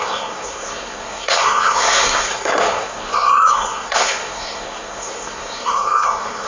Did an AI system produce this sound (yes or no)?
yes